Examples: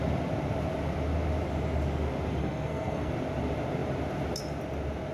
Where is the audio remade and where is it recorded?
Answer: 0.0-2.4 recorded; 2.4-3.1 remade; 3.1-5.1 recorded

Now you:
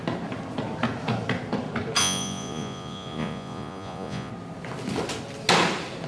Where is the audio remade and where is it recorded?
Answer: 0.0-2.0 recorded; 2.0-4.3 remade; 4.3-6.1 recorded